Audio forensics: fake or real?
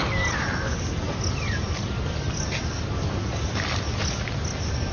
real